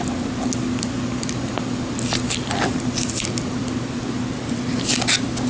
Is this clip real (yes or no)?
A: yes